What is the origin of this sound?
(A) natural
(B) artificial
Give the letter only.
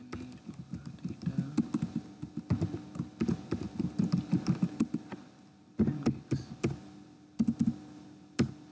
A